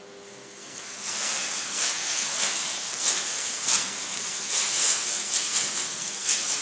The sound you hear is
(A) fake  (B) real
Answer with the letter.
A